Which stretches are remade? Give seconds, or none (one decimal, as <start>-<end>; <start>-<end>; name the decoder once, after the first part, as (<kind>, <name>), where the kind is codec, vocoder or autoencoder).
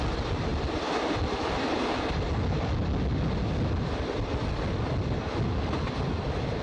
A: none